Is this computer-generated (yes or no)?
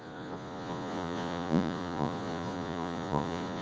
yes